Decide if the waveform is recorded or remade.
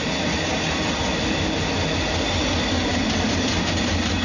recorded